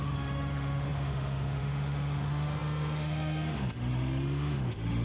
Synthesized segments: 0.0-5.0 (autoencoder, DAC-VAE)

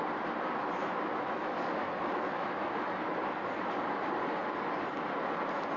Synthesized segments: 0.8-3.1 (autoencoder, DAC-VAE)

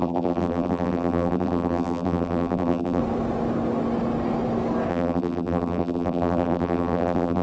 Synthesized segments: 0.0-3.0 (vocoder, BigVGAN v2); 4.9-7.4